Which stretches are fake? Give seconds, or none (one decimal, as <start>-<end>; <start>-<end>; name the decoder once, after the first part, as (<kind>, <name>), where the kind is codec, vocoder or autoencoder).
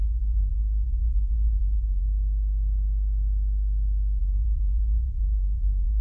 0.0-2.0 (vocoder, Vocos); 4.2-6.0